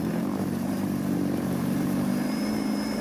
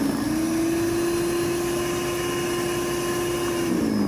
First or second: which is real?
second